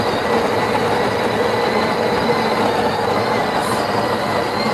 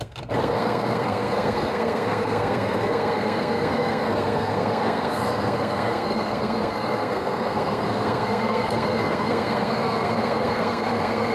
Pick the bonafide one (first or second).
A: first